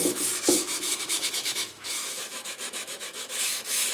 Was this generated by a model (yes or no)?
yes